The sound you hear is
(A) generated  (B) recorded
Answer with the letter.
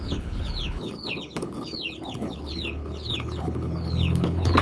A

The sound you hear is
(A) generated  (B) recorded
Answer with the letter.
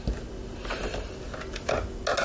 B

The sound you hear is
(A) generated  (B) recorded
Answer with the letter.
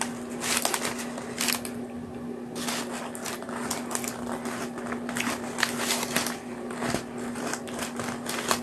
B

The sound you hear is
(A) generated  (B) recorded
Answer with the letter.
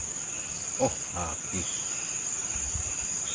B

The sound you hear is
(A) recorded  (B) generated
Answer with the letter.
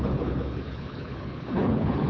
B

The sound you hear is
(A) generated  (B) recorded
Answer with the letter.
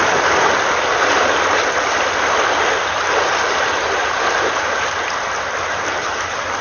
B